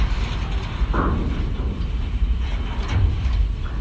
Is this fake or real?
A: real